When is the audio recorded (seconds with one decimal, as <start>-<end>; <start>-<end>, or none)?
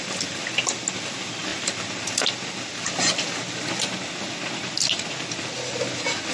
0.0-6.3